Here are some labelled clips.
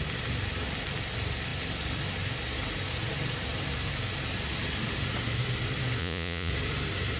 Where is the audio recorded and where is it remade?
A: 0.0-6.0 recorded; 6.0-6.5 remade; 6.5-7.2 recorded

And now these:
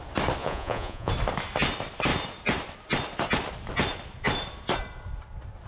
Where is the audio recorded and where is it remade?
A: 0.0-0.4 recorded; 0.4-1.1 remade; 1.1-5.7 recorded

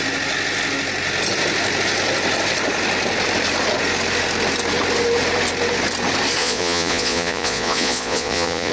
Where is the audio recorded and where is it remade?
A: 0.0-6.4 recorded; 6.4-8.7 remade